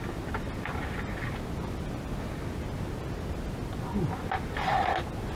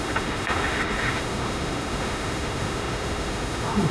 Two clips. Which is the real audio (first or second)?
first